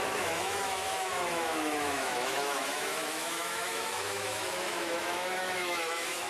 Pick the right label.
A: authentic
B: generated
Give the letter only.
B